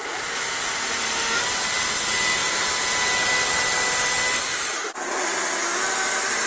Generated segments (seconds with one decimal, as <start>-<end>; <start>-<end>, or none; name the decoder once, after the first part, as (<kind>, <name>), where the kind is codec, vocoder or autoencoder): none